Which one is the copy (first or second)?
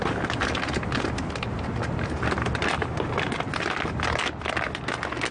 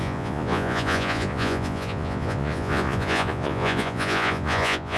second